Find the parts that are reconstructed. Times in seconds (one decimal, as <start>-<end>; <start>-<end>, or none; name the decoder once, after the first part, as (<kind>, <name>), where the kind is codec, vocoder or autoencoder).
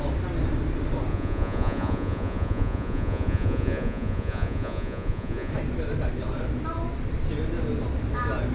1.1-5.5 (vocoder, Vocos)